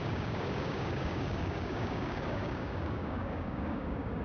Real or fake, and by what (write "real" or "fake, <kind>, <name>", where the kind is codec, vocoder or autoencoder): fake, codec, DAC